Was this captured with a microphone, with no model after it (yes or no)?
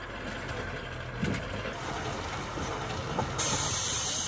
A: yes